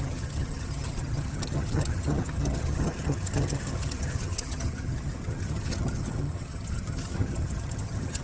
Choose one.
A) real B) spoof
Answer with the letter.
B